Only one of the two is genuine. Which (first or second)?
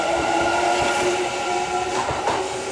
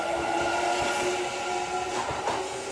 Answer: second